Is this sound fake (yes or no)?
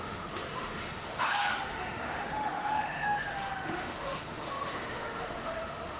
yes